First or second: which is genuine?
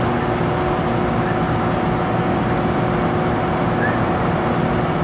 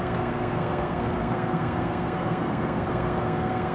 first